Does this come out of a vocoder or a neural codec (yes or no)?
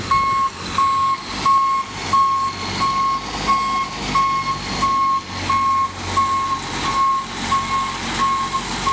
no